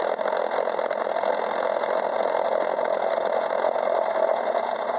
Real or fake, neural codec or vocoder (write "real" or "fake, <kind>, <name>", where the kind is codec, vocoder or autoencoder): real